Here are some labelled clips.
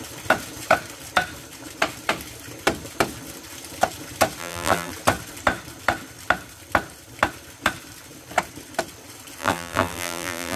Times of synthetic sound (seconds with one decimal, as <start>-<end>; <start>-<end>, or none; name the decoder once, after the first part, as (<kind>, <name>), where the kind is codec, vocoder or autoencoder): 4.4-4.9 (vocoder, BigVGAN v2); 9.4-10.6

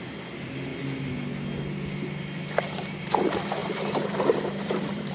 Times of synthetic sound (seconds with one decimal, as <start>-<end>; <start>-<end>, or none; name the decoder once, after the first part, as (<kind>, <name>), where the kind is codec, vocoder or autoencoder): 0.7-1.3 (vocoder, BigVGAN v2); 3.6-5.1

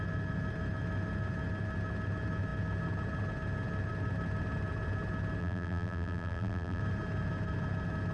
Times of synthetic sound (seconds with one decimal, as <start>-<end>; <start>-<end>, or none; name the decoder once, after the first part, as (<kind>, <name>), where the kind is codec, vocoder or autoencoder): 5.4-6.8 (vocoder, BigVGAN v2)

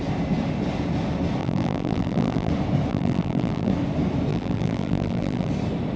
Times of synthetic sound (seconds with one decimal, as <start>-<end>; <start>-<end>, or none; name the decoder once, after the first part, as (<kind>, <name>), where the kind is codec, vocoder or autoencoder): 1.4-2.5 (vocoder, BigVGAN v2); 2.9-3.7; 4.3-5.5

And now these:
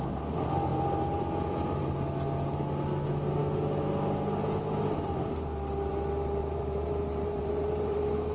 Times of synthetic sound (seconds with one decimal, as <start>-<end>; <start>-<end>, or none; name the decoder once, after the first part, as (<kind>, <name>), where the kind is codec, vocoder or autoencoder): 6.4-8.3 (vocoder, BigVGAN v2)

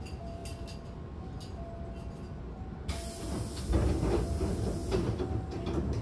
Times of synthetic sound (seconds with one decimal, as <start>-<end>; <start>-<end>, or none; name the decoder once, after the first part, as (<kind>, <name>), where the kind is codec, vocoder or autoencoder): 4.8-5.5 (vocoder, BigVGAN v2)

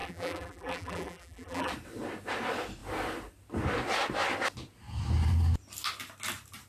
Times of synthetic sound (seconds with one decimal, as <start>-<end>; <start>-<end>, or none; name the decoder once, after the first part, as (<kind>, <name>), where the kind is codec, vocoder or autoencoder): 0.0-1.7 (vocoder, BigVGAN v2)